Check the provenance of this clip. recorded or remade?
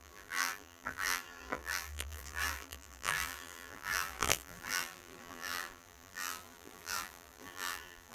remade